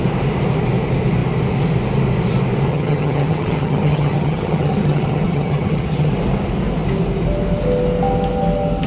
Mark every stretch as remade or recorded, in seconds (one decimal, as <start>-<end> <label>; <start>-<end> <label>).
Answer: 0.0-2.7 recorded; 2.7-6.1 remade; 6.1-8.9 recorded